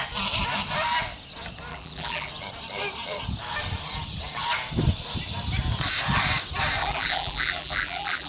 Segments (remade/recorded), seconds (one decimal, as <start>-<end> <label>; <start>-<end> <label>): 0.0-1.7 recorded; 1.7-2.3 remade; 2.3-6.8 recorded; 6.8-8.3 remade

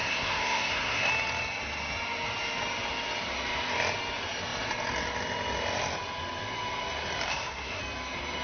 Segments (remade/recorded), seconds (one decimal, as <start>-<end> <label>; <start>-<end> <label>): 0.0-1.1 remade; 1.1-7.3 recorded; 7.3-7.8 remade; 7.8-8.4 recorded

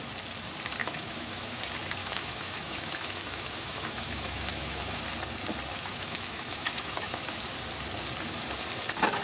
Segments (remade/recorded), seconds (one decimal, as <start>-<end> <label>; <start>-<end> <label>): 0.0-0.8 recorded; 0.8-1.6 remade; 1.6-2.0 recorded; 2.0-5.0 remade; 5.0-5.7 recorded; 5.7-7.4 remade; 7.4-9.2 recorded

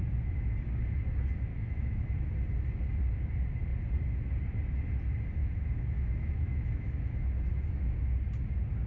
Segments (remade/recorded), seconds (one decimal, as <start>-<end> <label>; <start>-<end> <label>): 0.0-1.5 recorded; 1.5-2.3 remade; 2.3-5.4 recorded; 5.4-7.9 remade; 7.9-8.9 recorded

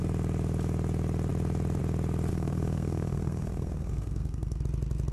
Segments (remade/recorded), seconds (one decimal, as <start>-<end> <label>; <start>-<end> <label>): 0.0-2.3 recorded; 2.3-4.6 remade; 4.6-5.1 recorded

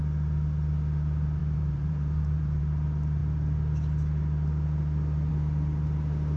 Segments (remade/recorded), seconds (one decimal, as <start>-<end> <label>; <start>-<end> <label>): 0.0-1.4 recorded; 1.4-2.6 remade; 2.6-6.4 recorded

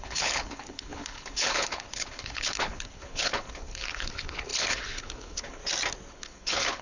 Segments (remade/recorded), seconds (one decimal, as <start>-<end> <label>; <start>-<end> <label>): 0.0-5.6 remade; 5.6-6.1 recorded; 6.1-6.8 remade

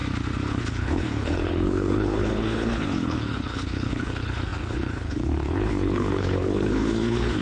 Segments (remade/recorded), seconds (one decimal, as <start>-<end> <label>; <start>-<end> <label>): 0.0-0.5 recorded; 0.5-7.4 remade